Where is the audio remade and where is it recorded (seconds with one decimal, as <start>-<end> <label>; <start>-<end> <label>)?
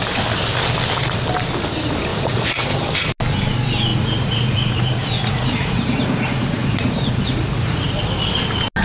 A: 0.0-2.1 recorded; 2.1-2.7 remade; 2.7-3.9 recorded; 3.9-8.0 remade; 8.0-8.8 recorded